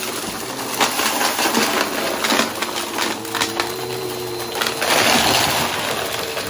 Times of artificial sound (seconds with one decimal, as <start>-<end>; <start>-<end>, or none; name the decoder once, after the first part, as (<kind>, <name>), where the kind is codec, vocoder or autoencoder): none